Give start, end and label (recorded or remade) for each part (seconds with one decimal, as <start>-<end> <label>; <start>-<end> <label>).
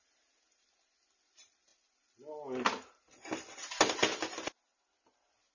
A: 0.0-5.5 recorded